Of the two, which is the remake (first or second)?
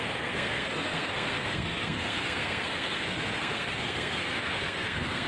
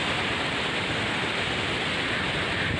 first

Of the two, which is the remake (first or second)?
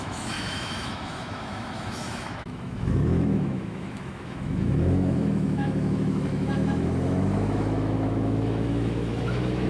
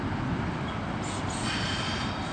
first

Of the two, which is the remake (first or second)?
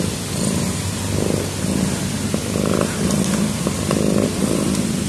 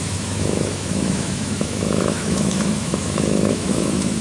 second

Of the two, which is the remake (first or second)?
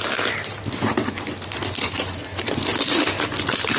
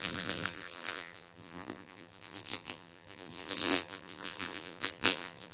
second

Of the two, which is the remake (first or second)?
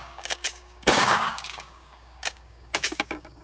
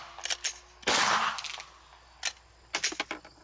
first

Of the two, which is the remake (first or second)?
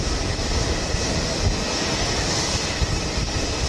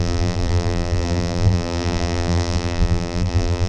second